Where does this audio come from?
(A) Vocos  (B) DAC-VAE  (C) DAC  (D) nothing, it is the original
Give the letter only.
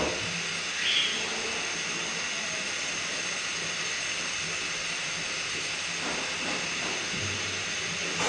D